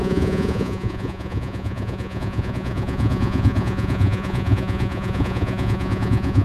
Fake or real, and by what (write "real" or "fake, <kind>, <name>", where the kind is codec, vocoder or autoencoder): fake, vocoder, Vocos